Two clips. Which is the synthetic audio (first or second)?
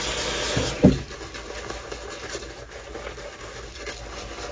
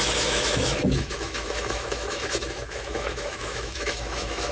second